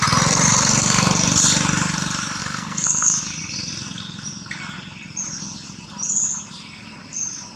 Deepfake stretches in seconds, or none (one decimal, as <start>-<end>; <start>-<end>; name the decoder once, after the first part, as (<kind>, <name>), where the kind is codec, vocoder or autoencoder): 2.4-3.2 (codec, SNAC)